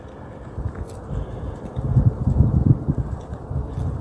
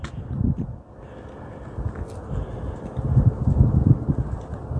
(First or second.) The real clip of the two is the second